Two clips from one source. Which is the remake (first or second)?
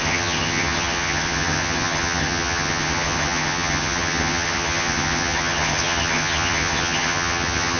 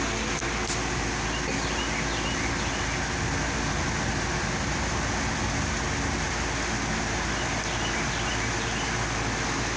first